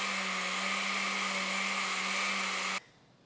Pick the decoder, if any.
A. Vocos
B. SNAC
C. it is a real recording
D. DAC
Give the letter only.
C